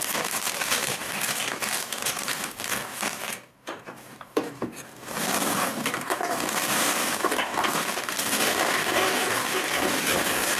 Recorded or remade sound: remade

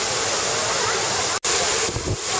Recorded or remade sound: recorded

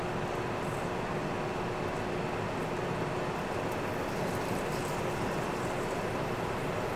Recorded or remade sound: recorded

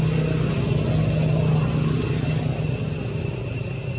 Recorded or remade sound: recorded